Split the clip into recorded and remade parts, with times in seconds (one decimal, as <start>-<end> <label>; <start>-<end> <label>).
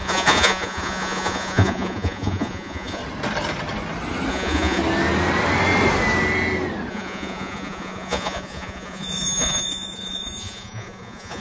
0.0-3.0 remade; 3.0-4.3 recorded; 4.3-4.8 remade; 4.8-6.9 recorded; 6.9-11.4 remade